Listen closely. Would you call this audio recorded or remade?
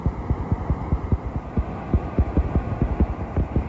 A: recorded